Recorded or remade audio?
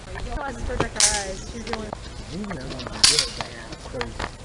recorded